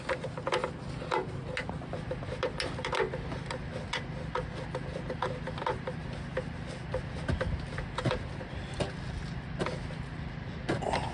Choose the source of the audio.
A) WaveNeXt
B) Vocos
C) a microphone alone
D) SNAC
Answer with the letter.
C